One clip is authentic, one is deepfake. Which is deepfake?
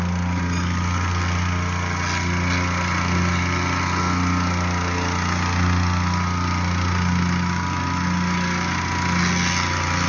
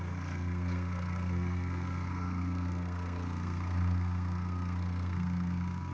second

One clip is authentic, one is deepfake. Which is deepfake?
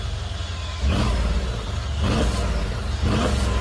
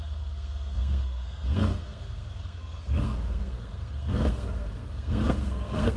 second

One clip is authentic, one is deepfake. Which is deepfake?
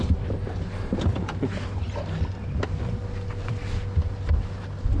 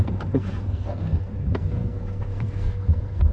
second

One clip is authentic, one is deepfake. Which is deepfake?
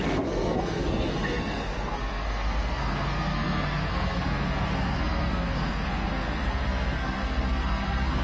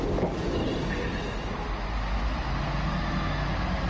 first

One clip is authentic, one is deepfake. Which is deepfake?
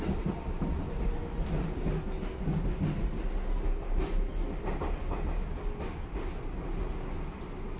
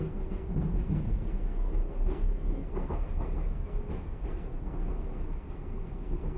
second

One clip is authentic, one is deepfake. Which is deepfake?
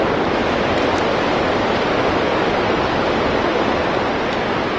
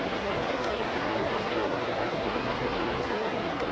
second